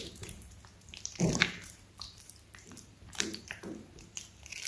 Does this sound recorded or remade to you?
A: remade